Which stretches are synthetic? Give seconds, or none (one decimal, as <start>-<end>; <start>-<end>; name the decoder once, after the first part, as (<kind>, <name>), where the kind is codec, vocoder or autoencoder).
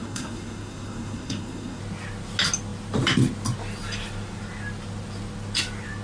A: 0.0-1.8 (codec, SNAC)